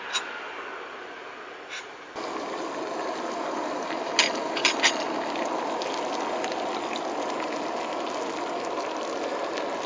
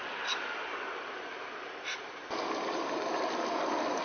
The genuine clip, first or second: first